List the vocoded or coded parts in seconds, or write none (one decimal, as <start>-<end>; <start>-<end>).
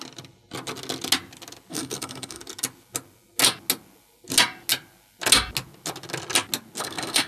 1.7-2.4; 6.8-7.3